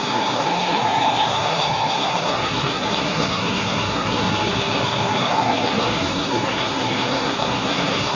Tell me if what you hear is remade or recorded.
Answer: remade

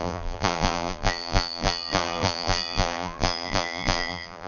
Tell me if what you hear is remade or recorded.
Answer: remade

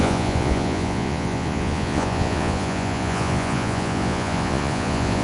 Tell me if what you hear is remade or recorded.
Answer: remade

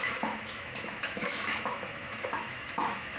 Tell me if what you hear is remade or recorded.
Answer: remade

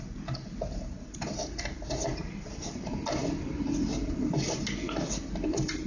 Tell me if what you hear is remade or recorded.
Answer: recorded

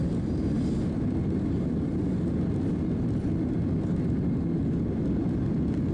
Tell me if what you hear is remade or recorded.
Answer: recorded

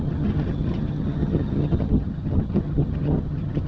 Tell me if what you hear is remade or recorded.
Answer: remade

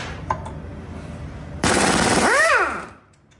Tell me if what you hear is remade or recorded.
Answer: remade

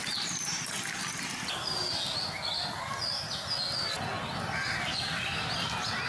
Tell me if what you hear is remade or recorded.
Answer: recorded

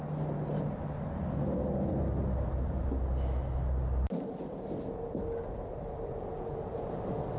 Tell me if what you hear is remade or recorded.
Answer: recorded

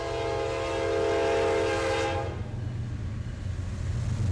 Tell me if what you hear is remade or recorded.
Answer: recorded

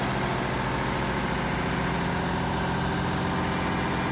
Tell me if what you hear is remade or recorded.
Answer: recorded